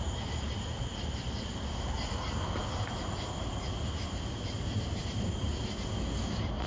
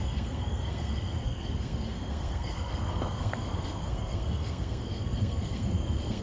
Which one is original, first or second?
first